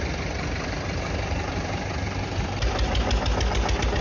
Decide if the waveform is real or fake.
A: real